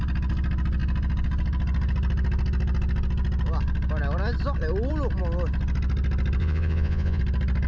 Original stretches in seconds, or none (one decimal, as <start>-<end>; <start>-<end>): 0.0-6.4; 7.2-7.7